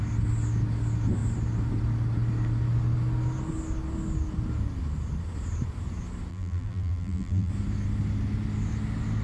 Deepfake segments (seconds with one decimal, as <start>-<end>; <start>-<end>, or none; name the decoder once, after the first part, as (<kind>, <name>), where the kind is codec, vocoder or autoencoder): 6.3-7.5 (vocoder, BigVGAN v2)